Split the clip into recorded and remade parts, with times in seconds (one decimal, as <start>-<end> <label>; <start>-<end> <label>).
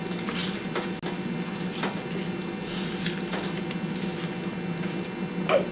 0.0-5.7 recorded